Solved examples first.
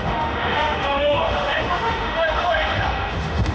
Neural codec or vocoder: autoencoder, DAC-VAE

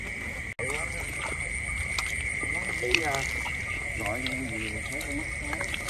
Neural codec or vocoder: none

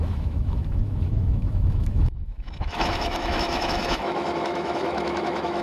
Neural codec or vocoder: autoencoder, DAC-VAE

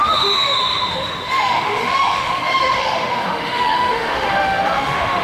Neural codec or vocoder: autoencoder, DAC-VAE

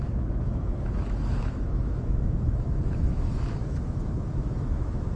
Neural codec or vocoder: autoencoder, DAC-VAE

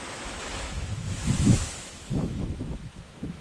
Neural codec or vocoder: autoencoder, DAC-VAE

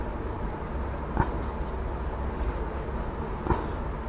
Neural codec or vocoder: none